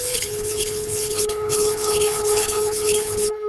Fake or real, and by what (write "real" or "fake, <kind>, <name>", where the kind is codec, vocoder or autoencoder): fake, codec, HILCodec